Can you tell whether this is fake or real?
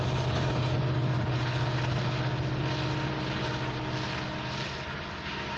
real